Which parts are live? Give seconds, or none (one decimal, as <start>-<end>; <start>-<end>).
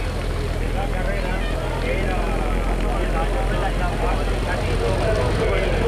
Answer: 0.0-5.9